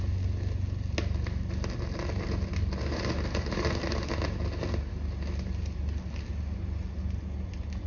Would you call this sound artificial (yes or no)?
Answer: no